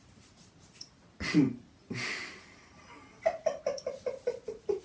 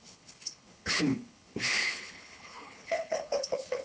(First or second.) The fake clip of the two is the second